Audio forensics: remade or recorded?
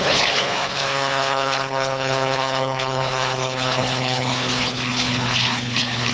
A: remade